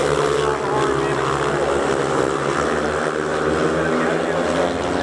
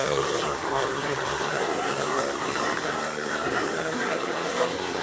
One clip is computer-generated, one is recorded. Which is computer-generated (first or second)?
second